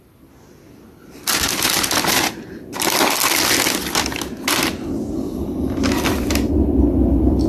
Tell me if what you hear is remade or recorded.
recorded